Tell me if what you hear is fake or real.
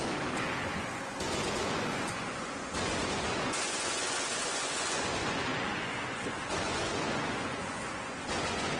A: fake